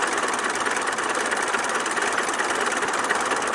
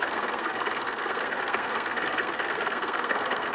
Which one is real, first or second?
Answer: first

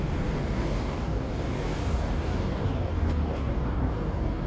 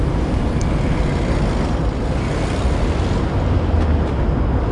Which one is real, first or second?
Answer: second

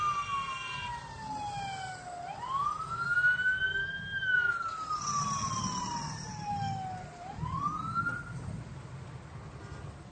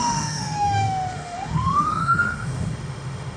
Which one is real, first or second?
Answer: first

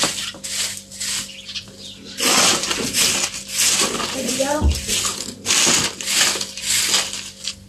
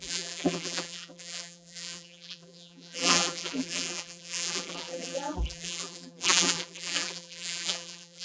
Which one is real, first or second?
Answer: first